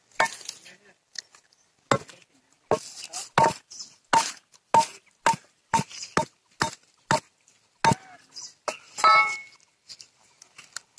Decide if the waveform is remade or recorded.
recorded